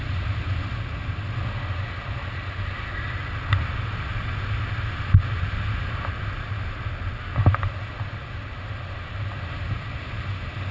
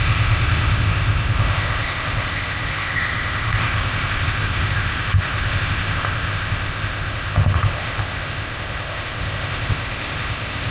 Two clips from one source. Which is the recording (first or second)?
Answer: first